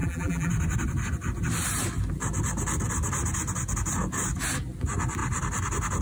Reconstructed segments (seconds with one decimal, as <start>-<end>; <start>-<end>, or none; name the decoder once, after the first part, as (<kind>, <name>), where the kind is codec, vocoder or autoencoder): 0.0-0.5 (vocoder, BigVGAN v2)